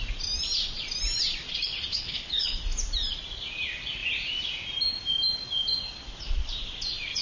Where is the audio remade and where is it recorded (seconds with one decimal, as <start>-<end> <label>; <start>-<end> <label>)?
0.0-1.9 recorded; 1.9-2.6 remade; 2.6-7.2 recorded

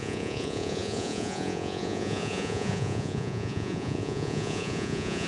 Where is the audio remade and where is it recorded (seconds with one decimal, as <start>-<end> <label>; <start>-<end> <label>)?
0.0-5.3 remade

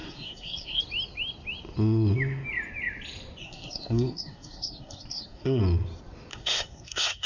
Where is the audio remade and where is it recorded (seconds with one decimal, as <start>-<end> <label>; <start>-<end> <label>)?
0.0-0.8 remade; 0.8-3.4 recorded; 3.4-5.6 remade; 5.6-6.3 recorded; 6.3-7.3 remade

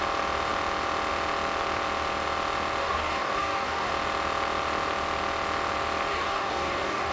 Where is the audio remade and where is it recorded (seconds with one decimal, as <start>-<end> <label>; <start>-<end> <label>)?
0.0-2.8 recorded; 2.8-3.9 remade; 3.9-6.1 recorded; 6.1-7.1 remade